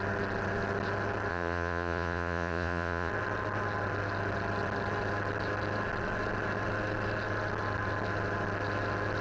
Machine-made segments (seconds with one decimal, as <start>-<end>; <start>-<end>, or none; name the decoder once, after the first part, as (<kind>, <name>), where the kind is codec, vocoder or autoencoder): 1.3-3.1 (vocoder, Vocos)